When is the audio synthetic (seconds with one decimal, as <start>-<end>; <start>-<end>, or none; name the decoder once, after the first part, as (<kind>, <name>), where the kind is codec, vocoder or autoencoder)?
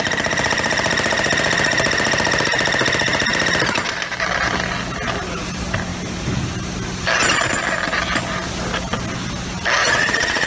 9.8-10.5 (vocoder, Vocos)